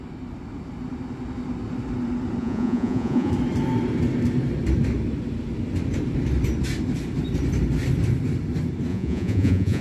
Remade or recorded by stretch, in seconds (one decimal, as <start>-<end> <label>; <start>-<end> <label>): 0.0-2.4 recorded; 2.4-3.3 remade; 3.3-8.9 recorded; 8.9-9.8 remade